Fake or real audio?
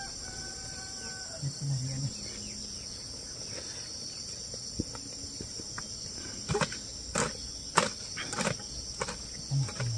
real